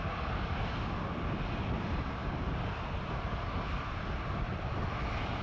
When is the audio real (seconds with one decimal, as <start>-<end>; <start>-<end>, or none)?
0.0-5.4